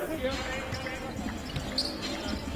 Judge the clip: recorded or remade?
recorded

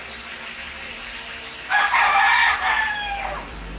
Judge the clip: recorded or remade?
remade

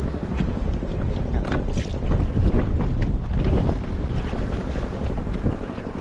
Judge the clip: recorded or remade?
recorded